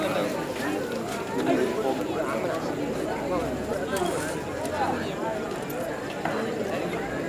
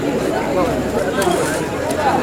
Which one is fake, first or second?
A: second